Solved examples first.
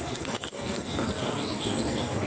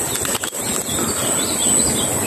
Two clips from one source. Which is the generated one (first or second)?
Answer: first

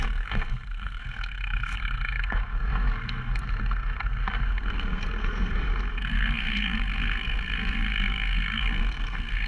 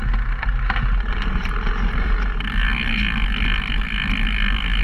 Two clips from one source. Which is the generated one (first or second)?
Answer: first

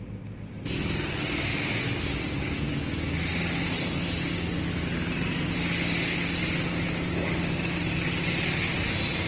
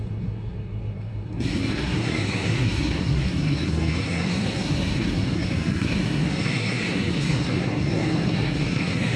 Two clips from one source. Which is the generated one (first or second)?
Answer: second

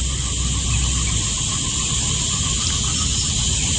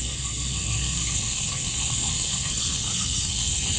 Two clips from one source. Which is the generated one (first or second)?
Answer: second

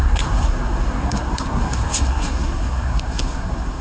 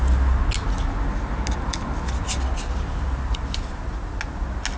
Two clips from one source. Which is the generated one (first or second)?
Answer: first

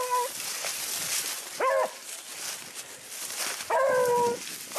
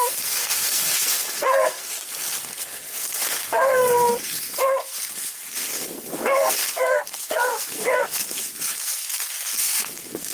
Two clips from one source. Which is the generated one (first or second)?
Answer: second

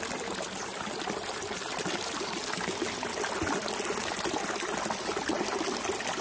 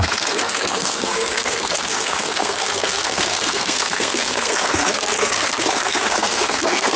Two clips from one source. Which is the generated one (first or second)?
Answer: second